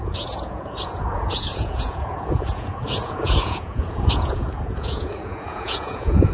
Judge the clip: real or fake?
fake